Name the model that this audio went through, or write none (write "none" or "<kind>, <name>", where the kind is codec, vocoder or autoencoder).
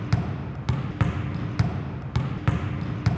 none